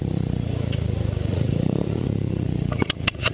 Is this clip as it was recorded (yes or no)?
no